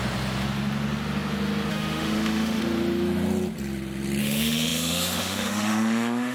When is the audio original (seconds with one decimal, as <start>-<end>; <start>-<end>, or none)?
0.0-1.7; 2.6-4.2